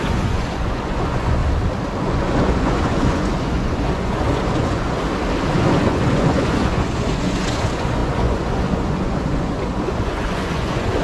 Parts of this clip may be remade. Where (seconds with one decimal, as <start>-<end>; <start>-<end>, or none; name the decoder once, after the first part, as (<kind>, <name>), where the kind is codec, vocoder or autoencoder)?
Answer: 0.0-1.4 (vocoder, Vocos); 2.0-5.0; 5.5-11.0